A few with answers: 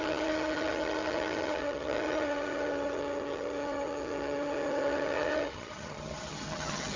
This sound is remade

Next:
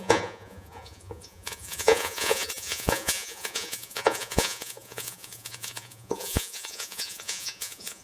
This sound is remade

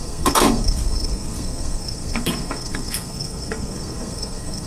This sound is remade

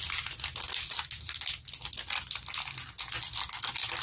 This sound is recorded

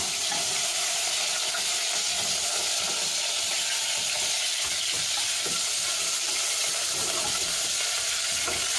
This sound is recorded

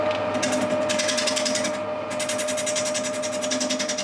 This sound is recorded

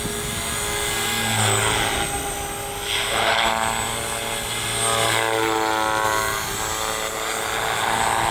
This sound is recorded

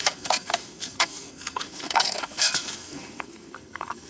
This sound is remade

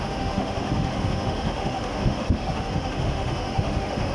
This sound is remade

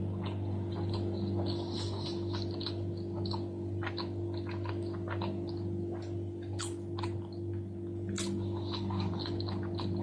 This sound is recorded